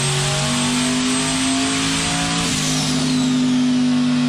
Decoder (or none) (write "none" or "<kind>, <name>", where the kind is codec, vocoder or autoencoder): none